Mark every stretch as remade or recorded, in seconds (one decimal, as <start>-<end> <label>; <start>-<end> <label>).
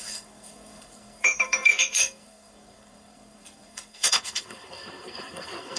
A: 0.0-5.8 remade